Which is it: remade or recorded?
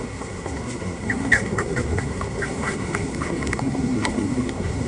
remade